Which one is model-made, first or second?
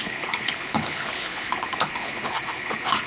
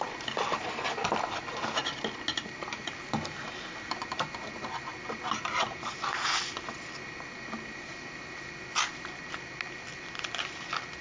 first